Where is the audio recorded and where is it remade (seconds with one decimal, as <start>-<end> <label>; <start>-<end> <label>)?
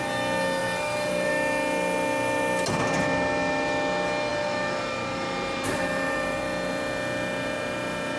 0.0-0.6 recorded; 0.6-1.3 remade; 1.3-4.3 recorded; 4.3-6.4 remade; 6.4-8.2 recorded